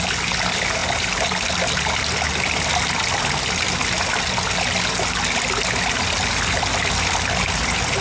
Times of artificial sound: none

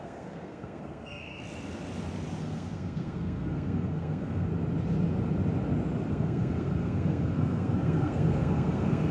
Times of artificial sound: 0.0-1.3 (codec, SNAC); 2.4-4.5; 6.1-9.1

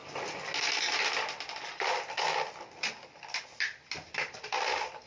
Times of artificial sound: none

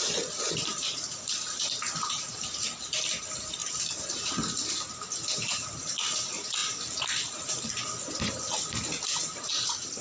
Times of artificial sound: none